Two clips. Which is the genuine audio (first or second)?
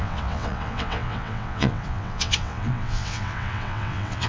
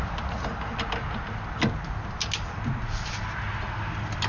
second